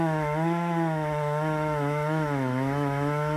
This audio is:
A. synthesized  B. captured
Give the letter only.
A